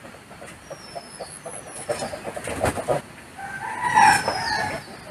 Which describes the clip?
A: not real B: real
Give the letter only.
B